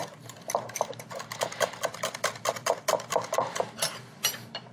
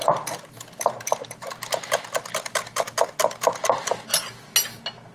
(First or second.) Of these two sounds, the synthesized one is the first